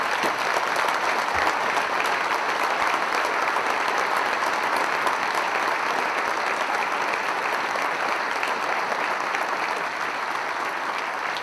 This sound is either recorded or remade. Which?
recorded